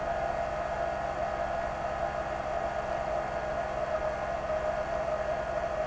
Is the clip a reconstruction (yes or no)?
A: no